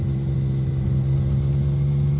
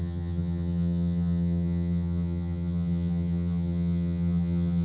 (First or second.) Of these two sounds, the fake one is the second